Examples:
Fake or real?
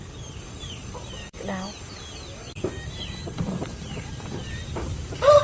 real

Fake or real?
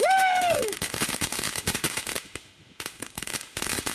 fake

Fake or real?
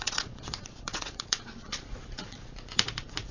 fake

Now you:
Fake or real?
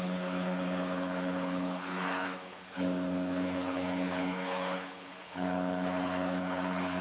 fake